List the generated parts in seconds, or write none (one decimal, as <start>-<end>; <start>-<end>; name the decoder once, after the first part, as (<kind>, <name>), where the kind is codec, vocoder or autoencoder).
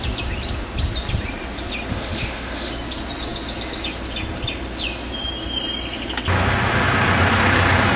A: 1.9-2.7 (autoencoder, DAC-VAE)